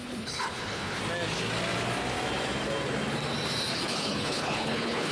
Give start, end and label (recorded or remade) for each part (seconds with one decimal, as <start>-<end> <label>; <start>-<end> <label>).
0.0-1.0 remade; 1.0-3.9 recorded; 3.9-5.1 remade

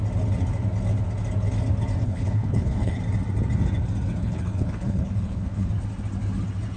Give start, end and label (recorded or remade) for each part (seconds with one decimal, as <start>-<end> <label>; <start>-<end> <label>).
0.0-2.0 recorded; 2.0-3.0 remade; 3.0-4.2 recorded; 4.2-5.7 remade; 5.7-6.8 recorded

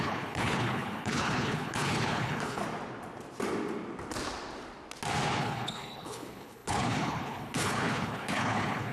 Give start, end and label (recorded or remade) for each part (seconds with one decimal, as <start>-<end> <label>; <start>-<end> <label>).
0.0-2.6 remade; 2.6-5.4 recorded; 5.4-8.9 remade

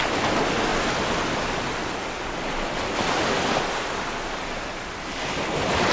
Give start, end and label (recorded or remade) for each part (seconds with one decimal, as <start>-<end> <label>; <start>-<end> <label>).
0.0-5.9 recorded

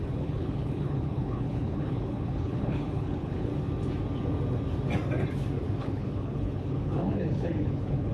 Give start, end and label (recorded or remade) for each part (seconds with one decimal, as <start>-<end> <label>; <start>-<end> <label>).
0.0-3.5 remade; 3.5-5.8 recorded; 5.8-8.1 remade

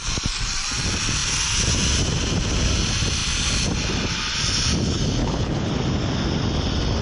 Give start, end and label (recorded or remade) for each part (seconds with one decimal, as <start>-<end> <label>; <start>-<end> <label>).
0.0-5.2 recorded; 5.2-5.7 remade; 5.7-7.0 recorded

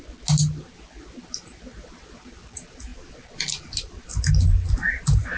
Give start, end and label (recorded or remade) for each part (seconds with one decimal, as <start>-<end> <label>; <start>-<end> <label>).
0.0-5.4 recorded